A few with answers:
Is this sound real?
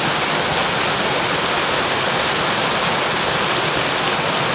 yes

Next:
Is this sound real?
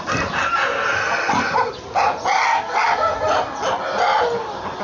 yes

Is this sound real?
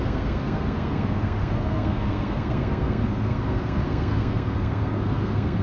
no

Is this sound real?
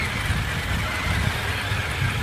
yes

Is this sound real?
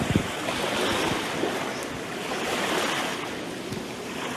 yes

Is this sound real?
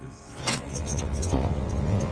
no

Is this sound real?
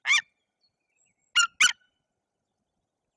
yes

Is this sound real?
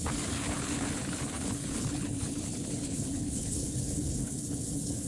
no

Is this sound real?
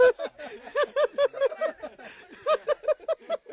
yes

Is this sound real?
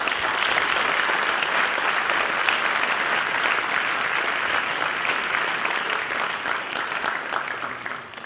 yes